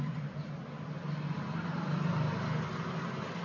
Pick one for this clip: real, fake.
real